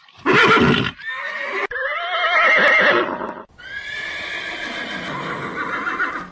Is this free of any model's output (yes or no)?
yes